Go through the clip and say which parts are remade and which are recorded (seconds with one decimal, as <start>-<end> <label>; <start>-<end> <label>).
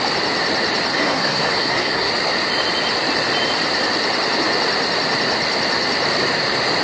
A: 0.0-0.9 recorded; 0.9-2.1 remade; 2.1-6.8 recorded